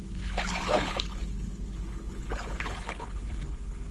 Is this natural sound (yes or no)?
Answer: no